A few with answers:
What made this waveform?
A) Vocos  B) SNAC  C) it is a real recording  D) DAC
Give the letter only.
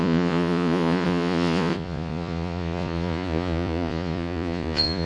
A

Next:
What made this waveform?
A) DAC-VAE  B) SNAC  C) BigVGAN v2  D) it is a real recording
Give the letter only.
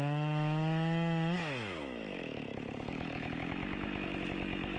A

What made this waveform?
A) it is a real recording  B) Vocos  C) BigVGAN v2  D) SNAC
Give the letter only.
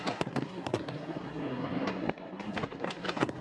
D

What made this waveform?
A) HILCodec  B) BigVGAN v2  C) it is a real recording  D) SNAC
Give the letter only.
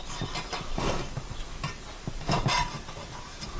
B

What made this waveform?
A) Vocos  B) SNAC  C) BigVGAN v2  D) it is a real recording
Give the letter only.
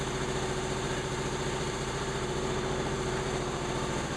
C